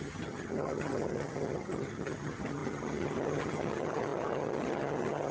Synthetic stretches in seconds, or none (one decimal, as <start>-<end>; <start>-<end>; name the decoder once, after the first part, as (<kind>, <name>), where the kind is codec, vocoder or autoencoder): 0.0-5.3 (vocoder, HiFi-GAN)